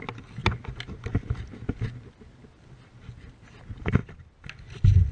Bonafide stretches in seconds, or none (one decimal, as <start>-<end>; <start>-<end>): 0.0-5.1